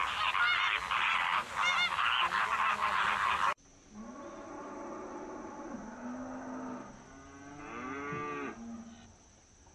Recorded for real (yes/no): yes